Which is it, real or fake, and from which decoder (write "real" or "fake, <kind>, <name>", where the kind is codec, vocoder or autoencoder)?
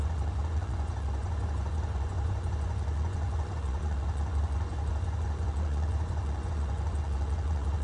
fake, vocoder, Vocos